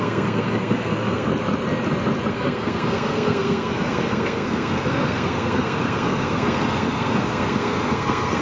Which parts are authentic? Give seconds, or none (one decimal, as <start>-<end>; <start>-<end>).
1.3-2.3